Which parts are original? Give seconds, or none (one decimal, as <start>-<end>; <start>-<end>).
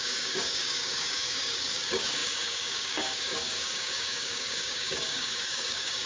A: none